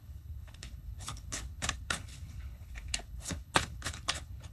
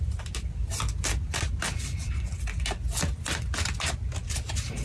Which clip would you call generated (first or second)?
first